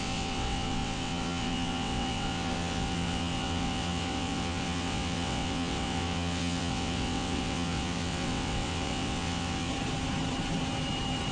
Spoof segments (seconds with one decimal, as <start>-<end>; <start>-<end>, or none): 0.0-9.7